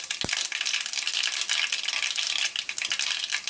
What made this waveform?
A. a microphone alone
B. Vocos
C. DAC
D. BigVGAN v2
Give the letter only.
A